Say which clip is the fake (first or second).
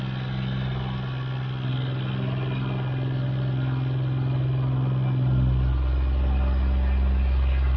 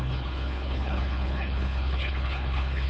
second